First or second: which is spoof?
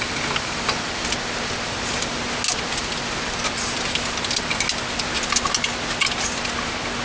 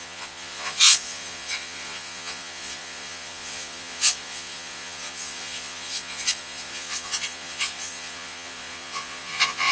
second